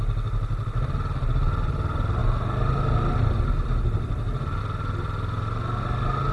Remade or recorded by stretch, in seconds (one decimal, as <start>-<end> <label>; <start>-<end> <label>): 0.0-6.3 recorded

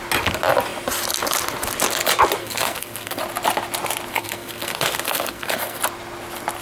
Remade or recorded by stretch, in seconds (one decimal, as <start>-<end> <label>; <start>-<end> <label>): 0.0-2.4 recorded; 2.4-3.2 remade; 3.2-4.1 recorded; 4.1-5.8 remade; 5.8-6.6 recorded